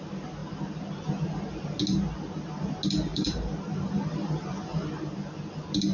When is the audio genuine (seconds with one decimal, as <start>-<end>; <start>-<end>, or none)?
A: 0.0-3.1; 5.3-5.9